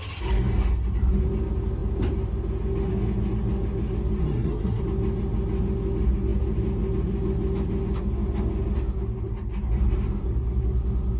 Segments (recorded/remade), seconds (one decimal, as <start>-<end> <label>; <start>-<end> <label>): 0.0-4.2 recorded; 4.2-4.8 remade; 4.8-11.2 recorded